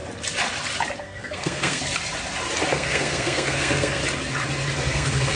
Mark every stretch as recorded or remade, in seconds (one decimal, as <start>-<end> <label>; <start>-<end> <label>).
0.0-1.0 recorded; 1.0-1.8 remade; 1.8-2.7 recorded; 2.7-4.0 remade; 4.0-4.8 recorded; 4.8-5.4 remade